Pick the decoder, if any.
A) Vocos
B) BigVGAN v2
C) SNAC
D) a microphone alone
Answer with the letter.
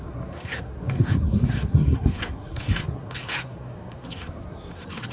C